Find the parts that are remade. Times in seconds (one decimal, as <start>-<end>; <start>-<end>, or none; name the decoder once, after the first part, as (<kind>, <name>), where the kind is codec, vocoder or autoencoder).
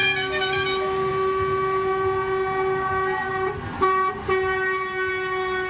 none